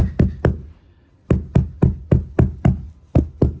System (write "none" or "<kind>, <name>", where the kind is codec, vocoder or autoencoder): none